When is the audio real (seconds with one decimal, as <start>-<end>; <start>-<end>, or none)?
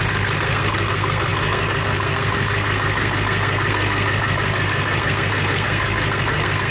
none